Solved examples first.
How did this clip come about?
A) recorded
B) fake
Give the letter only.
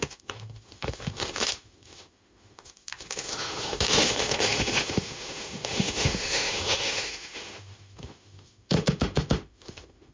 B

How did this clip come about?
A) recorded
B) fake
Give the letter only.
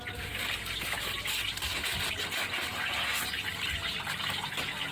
A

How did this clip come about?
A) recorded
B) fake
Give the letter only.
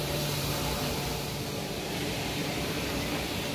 B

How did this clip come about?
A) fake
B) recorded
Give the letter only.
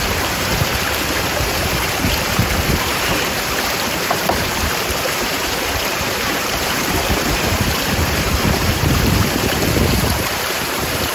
A